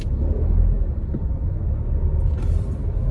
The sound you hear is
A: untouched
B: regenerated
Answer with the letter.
A